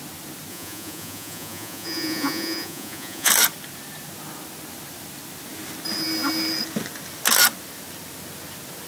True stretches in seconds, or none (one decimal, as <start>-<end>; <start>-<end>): 0.0-0.5; 3.3-8.9